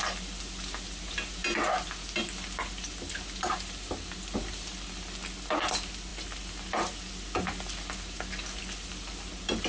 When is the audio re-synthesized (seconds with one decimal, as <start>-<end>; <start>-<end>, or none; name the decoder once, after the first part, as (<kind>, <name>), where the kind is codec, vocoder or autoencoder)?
none